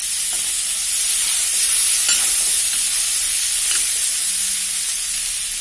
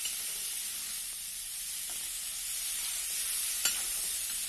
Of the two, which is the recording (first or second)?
first